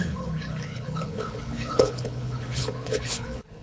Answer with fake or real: fake